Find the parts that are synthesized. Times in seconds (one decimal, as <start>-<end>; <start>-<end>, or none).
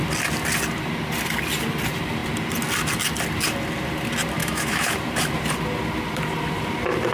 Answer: 4.4-4.9